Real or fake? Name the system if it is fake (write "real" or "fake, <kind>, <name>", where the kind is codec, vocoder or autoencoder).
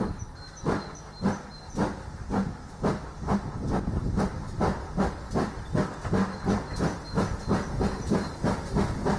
real